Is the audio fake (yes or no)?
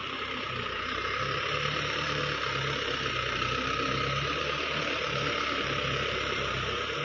yes